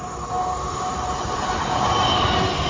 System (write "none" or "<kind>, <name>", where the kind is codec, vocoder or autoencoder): none